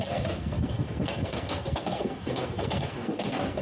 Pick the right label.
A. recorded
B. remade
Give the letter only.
B